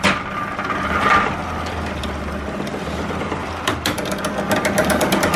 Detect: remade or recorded recorded